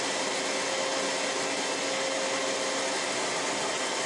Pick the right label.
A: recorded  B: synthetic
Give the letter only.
A